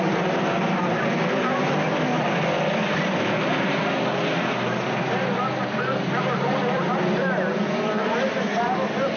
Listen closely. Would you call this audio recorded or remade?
remade